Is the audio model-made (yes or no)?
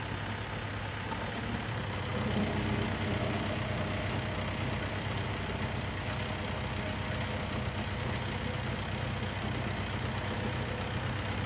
no